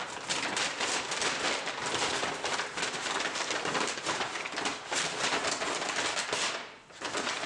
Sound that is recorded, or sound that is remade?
remade